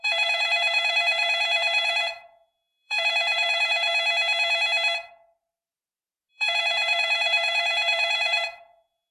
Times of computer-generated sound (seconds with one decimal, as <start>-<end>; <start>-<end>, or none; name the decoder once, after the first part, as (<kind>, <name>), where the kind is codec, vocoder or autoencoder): 0.0-3.9 (vocoder, Vocos); 6.3-9.1